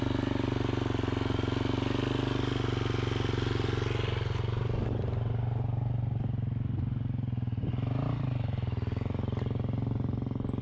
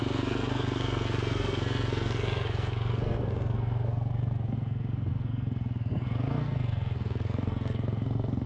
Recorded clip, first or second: first